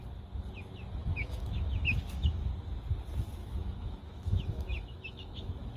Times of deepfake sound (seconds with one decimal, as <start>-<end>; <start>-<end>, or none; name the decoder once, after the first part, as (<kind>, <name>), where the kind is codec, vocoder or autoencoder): 1.0-2.5 (autoencoder, DAC-VAE); 3.4-5.8